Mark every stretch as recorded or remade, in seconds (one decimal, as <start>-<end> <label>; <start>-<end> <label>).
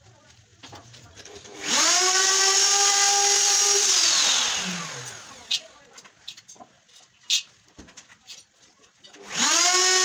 0.0-0.5 recorded; 0.5-2.4 remade; 2.4-10.0 recorded